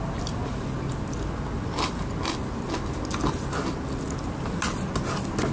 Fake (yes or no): no